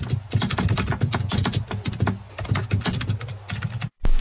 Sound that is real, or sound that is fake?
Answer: real